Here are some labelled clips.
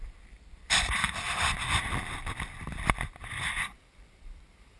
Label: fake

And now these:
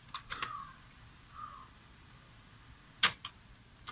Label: real